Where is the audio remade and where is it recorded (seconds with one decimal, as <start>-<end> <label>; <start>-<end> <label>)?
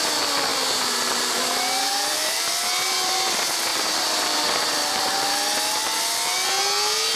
0.0-0.5 recorded; 0.5-1.4 remade; 1.4-1.9 recorded; 1.9-2.5 remade; 2.5-3.7 recorded; 3.7-5.1 remade; 5.1-7.2 recorded